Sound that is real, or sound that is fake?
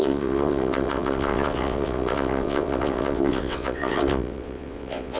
fake